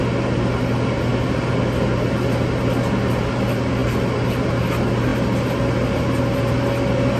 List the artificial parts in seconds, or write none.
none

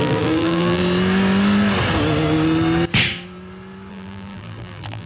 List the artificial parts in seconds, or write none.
0.0-0.8 (vocoder, BigVGAN v2); 3.9-5.1

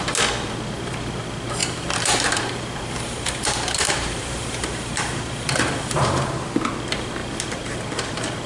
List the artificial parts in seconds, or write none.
1.6-6.3 (vocoder, BigVGAN v2)

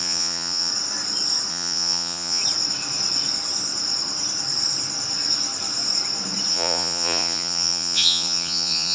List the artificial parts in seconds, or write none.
0.0-0.7 (vocoder, Vocos); 1.5-2.4; 6.5-8.9